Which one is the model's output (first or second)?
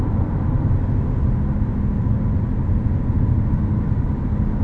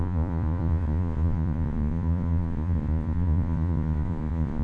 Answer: second